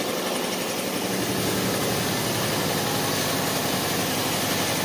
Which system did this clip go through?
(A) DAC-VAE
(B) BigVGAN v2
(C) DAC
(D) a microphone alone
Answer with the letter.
D